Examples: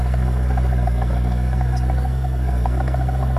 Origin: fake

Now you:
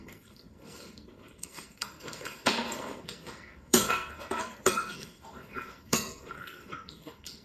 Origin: fake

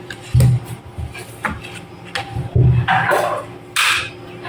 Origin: real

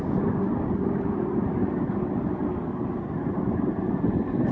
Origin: real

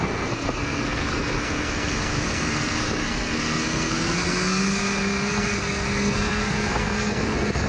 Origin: fake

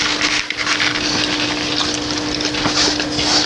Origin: real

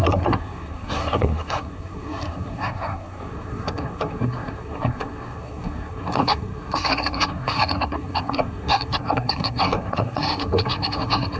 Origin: fake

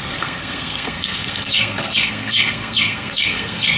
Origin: fake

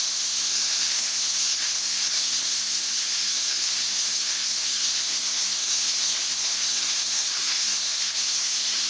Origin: fake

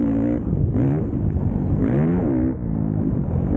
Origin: real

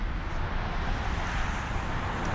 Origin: real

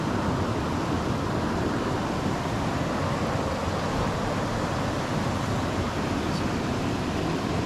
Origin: real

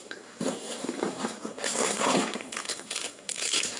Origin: fake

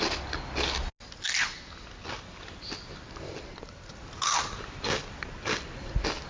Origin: real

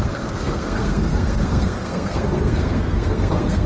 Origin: fake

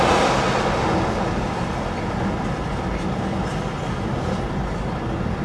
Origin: real